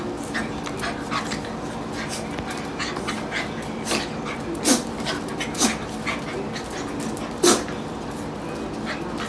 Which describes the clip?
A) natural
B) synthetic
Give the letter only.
A